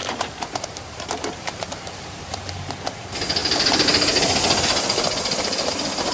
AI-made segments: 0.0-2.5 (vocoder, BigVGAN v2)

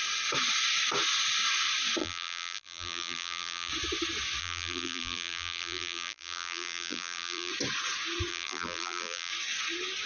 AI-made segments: 2.0-3.7 (vocoder, BigVGAN v2); 4.4-7.5; 8.3-9.3

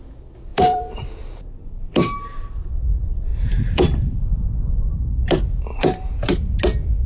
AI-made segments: 0.5-2.7 (vocoder, BigVGAN v2); 5.7-6.6

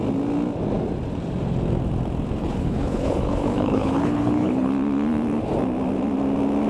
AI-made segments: 2.4-4.7 (codec, HILCodec)